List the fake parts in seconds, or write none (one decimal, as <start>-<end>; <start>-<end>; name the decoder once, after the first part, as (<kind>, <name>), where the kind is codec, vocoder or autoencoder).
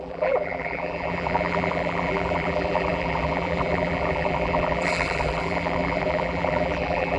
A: 0.0-7.2 (vocoder, BigVGAN v2)